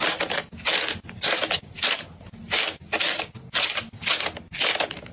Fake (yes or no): no